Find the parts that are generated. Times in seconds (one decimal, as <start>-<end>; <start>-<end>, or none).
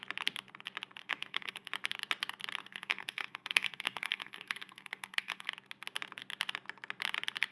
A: 1.0-1.7; 2.6-5.5